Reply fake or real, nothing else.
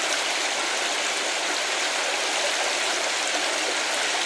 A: real